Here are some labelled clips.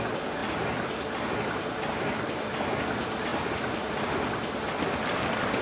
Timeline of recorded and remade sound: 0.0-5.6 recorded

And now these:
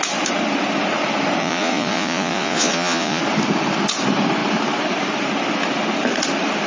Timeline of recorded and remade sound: 0.0-1.4 recorded; 1.4-3.2 remade; 3.2-6.7 recorded

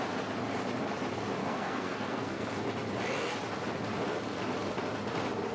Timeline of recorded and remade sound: 0.0-1.4 recorded; 1.4-2.6 remade; 2.6-5.5 recorded

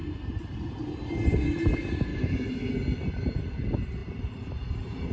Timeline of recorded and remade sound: 0.0-2.1 recorded; 2.1-2.7 remade; 2.7-5.1 recorded

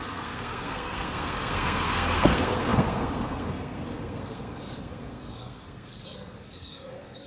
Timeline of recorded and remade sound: 0.0-7.3 remade

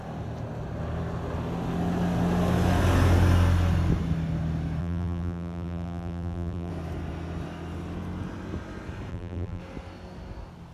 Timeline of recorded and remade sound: 0.0-4.8 recorded; 4.8-6.7 remade; 6.7-9.1 recorded; 9.1-9.6 remade; 9.6-10.7 recorded

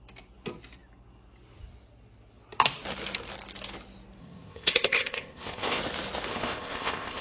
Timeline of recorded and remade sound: 0.0-4.2 recorded; 4.2-5.8 remade; 5.8-6.3 recorded; 6.3-7.2 remade